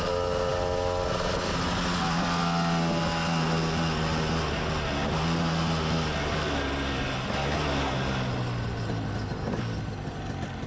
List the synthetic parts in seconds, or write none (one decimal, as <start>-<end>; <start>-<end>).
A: none